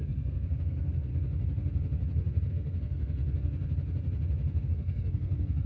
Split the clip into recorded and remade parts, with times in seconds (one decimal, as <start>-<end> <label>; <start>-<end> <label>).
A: 0.0-1.1 remade; 1.1-2.5 recorded; 2.5-3.2 remade; 3.2-4.6 recorded; 4.6-5.7 remade